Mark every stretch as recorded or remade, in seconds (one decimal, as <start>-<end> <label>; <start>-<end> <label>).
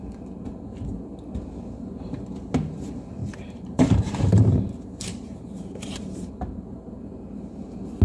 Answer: 0.0-3.2 recorded; 3.2-6.3 remade; 6.3-8.0 recorded